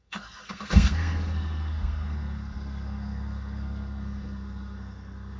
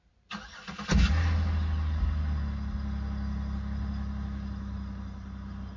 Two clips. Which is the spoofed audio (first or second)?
first